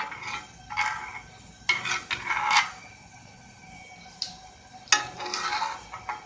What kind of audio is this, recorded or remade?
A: recorded